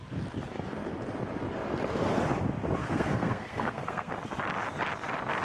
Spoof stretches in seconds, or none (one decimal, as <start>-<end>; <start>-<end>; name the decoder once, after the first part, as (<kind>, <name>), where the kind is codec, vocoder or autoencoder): 2.8-4.1 (codec, SNAC)

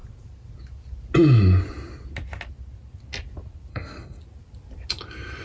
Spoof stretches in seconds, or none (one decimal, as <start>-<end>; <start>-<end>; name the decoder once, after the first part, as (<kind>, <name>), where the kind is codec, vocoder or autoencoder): 3.7-4.2 (codec, SNAC)

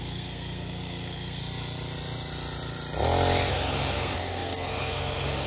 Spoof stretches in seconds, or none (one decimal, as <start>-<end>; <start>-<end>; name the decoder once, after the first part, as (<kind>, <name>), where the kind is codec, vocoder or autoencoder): 0.0-1.4 (codec, SNAC); 3.5-5.5

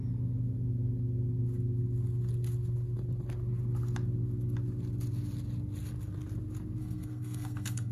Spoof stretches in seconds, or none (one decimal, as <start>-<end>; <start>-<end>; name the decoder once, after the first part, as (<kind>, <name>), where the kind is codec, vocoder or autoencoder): 6.8-7.9 (codec, SNAC)

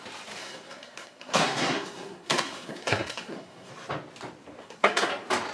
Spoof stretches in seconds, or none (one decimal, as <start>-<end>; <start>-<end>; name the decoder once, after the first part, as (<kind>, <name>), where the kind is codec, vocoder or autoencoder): 0.4-3.7 (codec, SNAC); 4.6-5.1